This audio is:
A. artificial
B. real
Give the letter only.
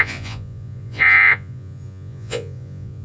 A